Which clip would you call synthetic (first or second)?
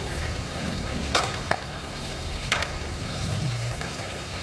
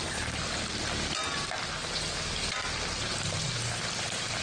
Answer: first